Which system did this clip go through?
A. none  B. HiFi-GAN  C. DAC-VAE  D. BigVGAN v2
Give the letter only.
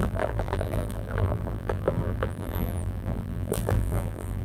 D